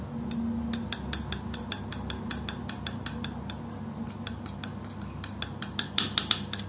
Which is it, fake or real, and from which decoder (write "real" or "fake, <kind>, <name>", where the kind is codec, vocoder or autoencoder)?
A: real